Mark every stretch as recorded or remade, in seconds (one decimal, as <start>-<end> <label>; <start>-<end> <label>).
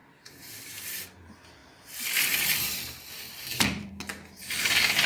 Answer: 0.0-1.0 remade; 1.0-1.6 recorded; 1.6-3.9 remade; 3.9-5.1 recorded